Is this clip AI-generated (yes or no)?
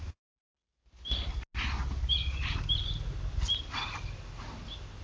no